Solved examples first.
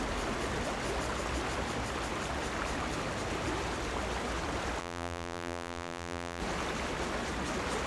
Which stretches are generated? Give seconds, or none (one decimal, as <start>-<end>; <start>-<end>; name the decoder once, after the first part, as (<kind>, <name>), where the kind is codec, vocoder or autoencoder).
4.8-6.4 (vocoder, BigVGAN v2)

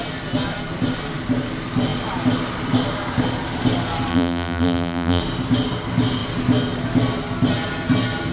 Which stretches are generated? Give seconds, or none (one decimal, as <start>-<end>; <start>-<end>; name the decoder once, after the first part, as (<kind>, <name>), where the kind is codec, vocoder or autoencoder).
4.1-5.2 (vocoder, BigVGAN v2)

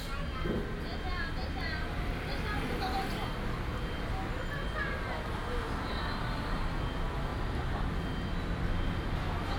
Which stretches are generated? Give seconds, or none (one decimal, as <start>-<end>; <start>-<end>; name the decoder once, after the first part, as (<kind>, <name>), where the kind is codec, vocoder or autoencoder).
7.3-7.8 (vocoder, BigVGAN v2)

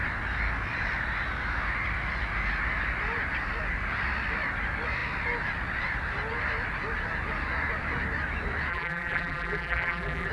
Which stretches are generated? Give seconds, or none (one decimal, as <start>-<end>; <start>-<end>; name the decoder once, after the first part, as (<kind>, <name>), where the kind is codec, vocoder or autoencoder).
8.7-10.3 (vocoder, BigVGAN v2)